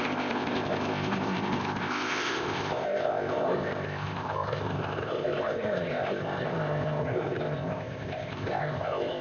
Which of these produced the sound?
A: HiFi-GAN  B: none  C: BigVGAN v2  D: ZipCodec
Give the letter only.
D